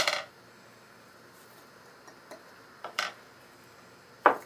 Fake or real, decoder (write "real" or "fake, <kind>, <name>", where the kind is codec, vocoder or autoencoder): fake, vocoder, BigVGAN v2